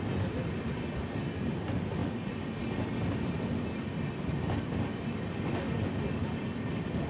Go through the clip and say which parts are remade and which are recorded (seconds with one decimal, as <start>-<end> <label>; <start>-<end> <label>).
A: 0.0-2.0 remade; 2.0-6.2 recorded; 6.2-7.1 remade